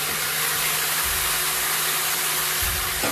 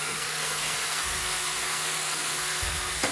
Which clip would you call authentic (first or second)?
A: first